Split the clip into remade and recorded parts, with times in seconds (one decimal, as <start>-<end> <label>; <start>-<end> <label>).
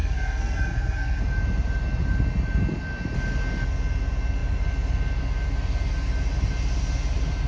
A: 0.0-1.2 remade; 1.2-7.5 recorded